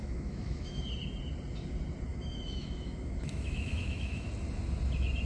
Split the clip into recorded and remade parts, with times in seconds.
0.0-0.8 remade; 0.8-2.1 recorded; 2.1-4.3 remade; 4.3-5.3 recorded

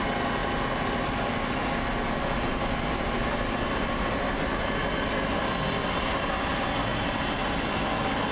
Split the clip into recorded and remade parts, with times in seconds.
0.0-6.9 recorded; 6.9-7.7 remade; 7.7-8.3 recorded

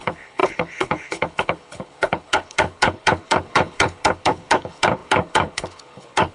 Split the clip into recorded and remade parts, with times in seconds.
0.0-6.3 remade

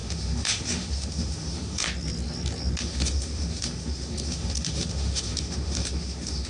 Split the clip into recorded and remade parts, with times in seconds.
0.0-1.9 remade; 1.9-2.8 recorded; 2.8-6.5 remade

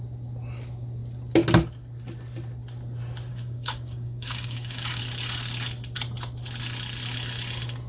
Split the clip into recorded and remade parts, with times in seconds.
0.0-3.3 recorded; 3.3-5.0 remade; 5.0-7.9 recorded

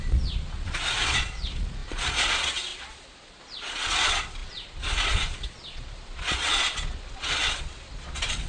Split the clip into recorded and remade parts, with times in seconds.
0.0-8.5 remade